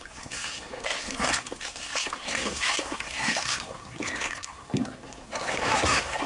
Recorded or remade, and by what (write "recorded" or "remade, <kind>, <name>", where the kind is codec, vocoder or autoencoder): remade, codec, SNAC